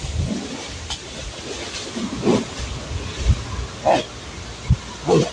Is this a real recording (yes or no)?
yes